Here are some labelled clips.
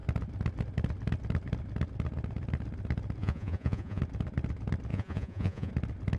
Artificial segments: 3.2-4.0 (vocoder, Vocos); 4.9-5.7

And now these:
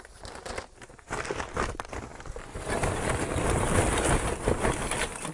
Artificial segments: 2.1-5.3 (vocoder, BigVGAN v2)

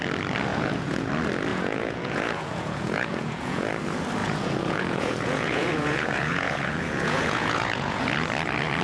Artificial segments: 0.5-1.1 (vocoder, Vocos); 1.5-3.7; 4.2-8.0

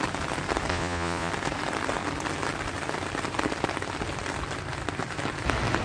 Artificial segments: 0.7-1.3 (vocoder, Vocos)